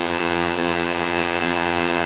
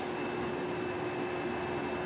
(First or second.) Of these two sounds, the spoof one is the first